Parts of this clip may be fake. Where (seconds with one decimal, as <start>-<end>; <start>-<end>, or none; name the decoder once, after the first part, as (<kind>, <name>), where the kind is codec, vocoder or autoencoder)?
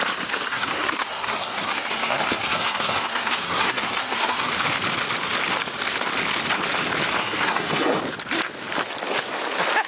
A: 0.5-4.5 (codec, SNAC); 7.2-8.0